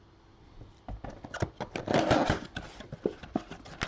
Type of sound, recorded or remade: recorded